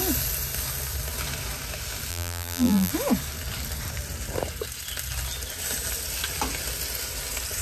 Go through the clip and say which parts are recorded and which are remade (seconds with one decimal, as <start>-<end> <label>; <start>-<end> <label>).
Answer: 0.0-2.1 recorded; 2.1-2.9 remade; 2.9-7.6 recorded